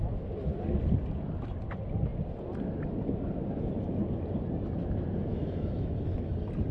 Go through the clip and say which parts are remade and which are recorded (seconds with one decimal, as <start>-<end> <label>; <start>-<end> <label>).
0.0-5.3 recorded; 5.3-6.3 remade; 6.3-6.7 recorded